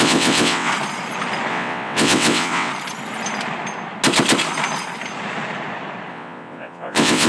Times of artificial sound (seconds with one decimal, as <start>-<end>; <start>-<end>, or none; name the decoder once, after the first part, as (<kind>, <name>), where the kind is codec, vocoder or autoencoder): 0.0-0.7 (vocoder, WaveNeXt); 1.5-2.7; 6.1-7.3